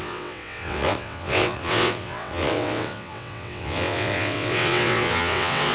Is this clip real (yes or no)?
no